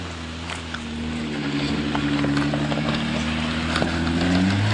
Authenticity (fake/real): real